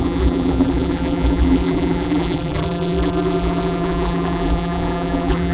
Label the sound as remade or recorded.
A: remade